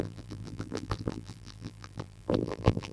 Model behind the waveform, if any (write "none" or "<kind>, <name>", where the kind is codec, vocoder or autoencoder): vocoder, BigVGAN v2